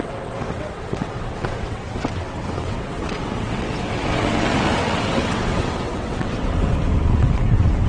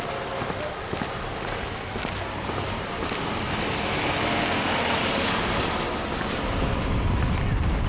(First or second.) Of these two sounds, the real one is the second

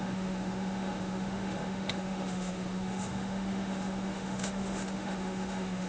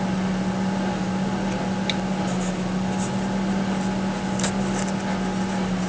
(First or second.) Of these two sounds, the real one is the second